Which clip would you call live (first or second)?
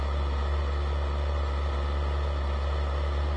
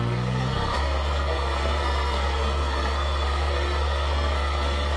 first